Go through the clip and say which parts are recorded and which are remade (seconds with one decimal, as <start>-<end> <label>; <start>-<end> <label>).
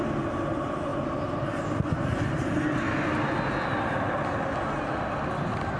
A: 0.0-5.8 recorded